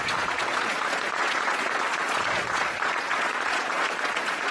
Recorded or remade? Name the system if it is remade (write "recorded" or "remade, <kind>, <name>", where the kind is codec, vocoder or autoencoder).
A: remade, vocoder, Vocos